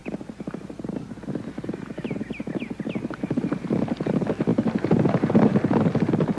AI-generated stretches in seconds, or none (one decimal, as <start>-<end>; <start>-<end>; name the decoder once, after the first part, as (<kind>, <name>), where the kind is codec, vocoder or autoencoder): none